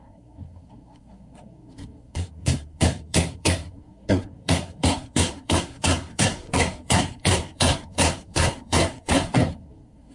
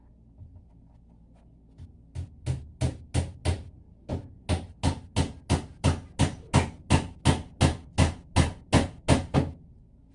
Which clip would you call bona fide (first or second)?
second